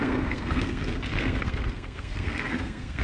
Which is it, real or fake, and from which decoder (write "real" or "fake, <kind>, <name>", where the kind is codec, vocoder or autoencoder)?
fake, codec, SNAC